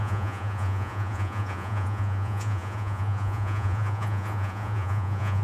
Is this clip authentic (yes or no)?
no